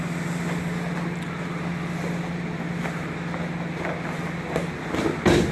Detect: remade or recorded recorded